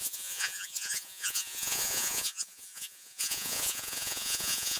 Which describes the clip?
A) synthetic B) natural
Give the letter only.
A